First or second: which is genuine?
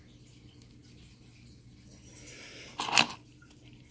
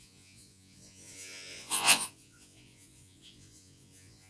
first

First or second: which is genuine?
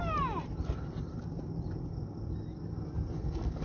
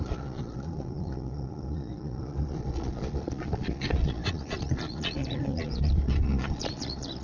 first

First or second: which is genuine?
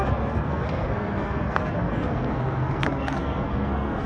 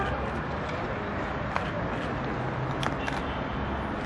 second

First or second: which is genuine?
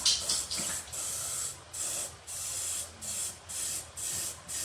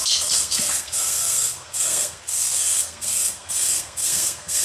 first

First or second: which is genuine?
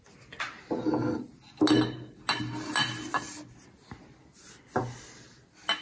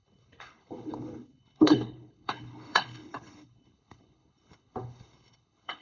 first